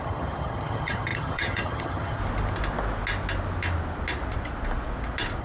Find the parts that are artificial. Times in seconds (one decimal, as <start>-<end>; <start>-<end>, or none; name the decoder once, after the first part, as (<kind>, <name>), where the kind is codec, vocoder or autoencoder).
0.0-2.2 (vocoder, HiFi-GAN)